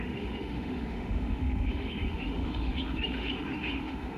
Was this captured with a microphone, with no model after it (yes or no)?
no